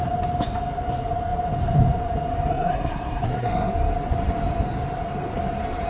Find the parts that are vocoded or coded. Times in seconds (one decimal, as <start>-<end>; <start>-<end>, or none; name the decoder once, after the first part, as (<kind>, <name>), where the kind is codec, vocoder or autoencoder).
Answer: 2.5-3.7 (codec, SNAC)